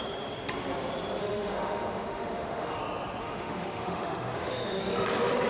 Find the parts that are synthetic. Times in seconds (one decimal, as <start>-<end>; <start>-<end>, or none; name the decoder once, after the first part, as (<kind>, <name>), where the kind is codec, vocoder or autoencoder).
1.2-2.8 (autoencoder, DAC-VAE); 3.2-4.8